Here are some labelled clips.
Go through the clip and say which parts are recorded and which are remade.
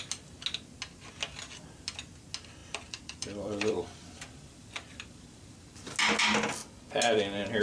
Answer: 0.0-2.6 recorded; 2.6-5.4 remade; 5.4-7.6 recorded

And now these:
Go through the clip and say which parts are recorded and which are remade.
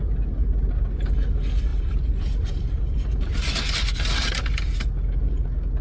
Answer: 0.0-1.7 recorded; 1.7-4.3 remade; 4.3-5.8 recorded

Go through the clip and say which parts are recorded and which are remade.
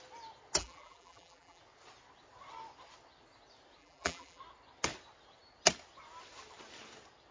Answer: 0.0-0.6 recorded; 0.6-1.6 remade; 1.6-3.8 recorded; 3.8-4.4 remade; 4.4-7.3 recorded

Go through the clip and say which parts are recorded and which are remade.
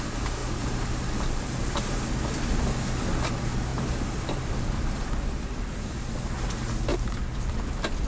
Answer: 0.0-0.4 recorded; 0.4-1.8 remade; 1.8-3.7 recorded; 3.7-5.0 remade; 5.0-6.9 recorded; 6.9-7.5 remade; 7.5-8.1 recorded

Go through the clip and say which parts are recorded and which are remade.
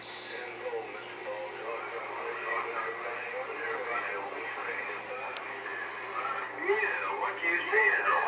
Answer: 0.0-1.2 recorded; 1.2-2.9 remade; 2.9-8.3 recorded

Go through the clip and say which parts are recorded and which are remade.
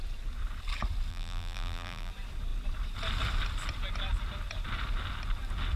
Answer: 0.0-1.1 recorded; 1.1-2.1 remade; 2.1-5.8 recorded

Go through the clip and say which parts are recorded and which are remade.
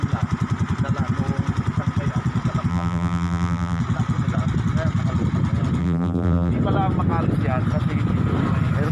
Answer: 0.0-2.7 recorded; 2.7-3.8 remade; 3.8-5.8 recorded; 5.8-6.5 remade; 6.5-8.9 recorded